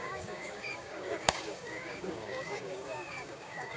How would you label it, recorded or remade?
remade